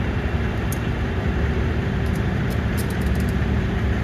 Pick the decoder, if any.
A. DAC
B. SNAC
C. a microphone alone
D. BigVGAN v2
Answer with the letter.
D